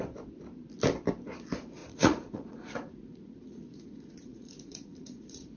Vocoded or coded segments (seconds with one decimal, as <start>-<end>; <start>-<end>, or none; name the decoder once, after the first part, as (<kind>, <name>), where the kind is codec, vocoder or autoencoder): 1.8-5.6 (vocoder, Vocos)